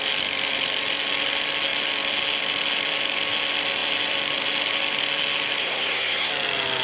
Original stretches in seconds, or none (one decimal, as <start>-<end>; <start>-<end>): 0.0-5.6; 6.3-6.8